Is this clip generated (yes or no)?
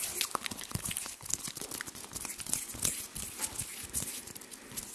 no